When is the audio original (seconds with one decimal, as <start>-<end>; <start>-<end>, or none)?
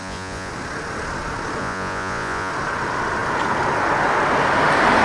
0.5-1.6; 2.5-5.0